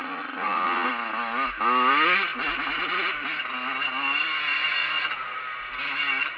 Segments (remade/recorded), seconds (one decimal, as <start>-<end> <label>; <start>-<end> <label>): 0.0-0.9 remade; 0.9-4.8 recorded; 4.8-5.4 remade; 5.4-6.4 recorded